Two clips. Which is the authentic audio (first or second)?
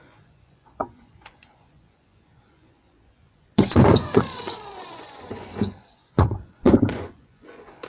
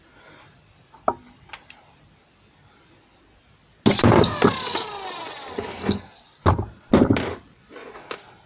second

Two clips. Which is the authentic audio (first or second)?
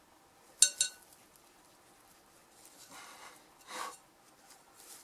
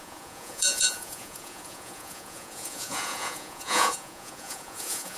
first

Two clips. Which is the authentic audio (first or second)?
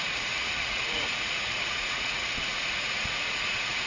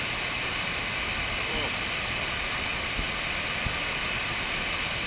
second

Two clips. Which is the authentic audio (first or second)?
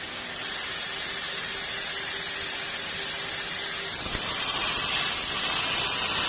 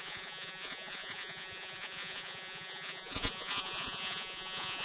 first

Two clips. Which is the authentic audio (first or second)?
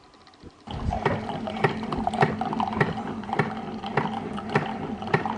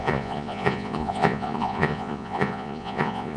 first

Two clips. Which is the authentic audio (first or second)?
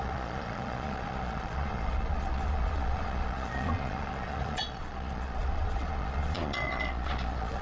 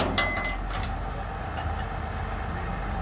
second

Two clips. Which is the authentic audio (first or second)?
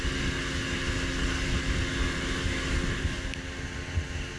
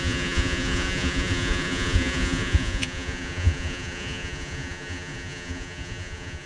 first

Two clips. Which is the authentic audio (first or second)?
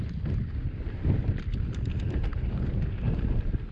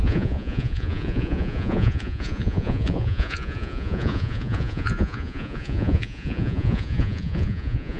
first